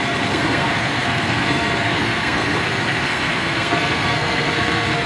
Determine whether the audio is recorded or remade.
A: remade